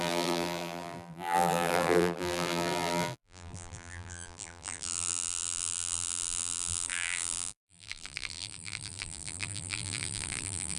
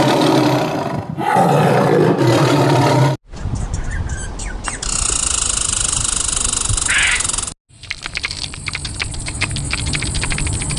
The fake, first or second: first